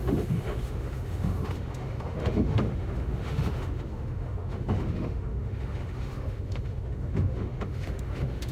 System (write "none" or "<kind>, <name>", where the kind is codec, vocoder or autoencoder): autoencoder, DAC-VAE